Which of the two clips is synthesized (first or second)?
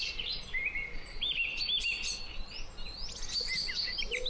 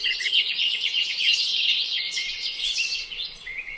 second